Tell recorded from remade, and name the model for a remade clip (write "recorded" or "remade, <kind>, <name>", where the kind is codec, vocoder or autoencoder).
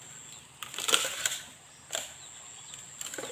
recorded